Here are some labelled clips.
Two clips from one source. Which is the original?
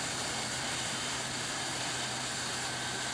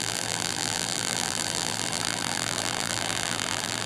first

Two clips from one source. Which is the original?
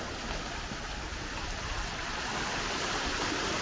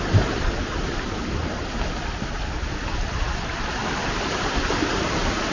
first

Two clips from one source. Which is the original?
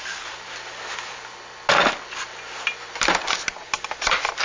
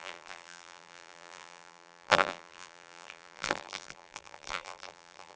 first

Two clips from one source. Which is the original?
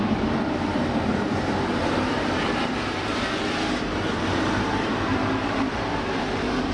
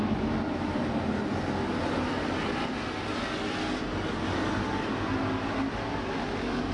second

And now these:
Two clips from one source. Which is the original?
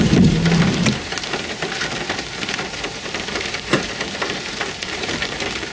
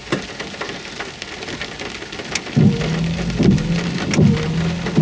second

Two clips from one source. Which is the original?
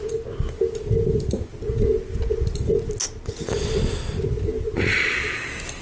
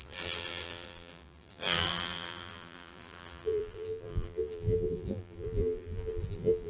first